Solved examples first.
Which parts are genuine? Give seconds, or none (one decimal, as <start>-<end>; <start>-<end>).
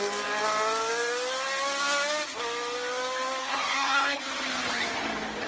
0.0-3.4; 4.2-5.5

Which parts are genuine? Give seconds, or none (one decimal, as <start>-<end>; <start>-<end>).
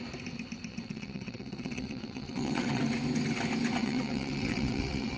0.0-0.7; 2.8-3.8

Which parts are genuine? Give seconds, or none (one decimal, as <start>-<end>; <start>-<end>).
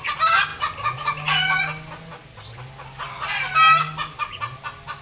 0.0-3.8; 4.4-5.0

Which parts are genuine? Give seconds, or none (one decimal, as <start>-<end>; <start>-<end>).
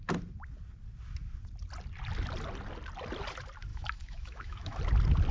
0.0-3.7; 4.8-5.3